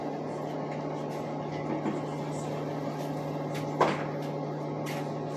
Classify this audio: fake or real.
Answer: real